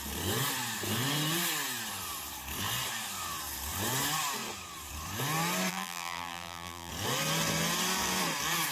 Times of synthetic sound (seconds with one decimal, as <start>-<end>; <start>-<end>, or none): 5.7-6.9